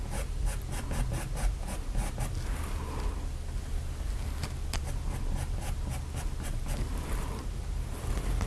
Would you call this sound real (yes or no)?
yes